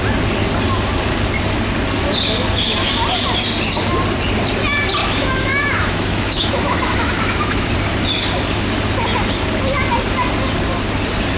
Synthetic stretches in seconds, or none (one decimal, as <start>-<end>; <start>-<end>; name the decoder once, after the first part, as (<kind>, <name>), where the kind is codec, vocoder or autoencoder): 5.0-7.7 (autoencoder, DAC-VAE)